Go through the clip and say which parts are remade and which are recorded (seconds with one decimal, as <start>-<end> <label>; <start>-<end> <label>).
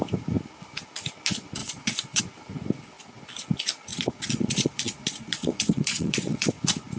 0.0-1.6 recorded; 1.6-2.2 remade; 2.2-3.9 recorded; 3.9-6.5 remade; 6.5-7.0 recorded